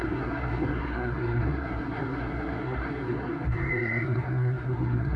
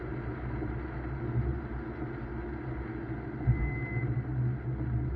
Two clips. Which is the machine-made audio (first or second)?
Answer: first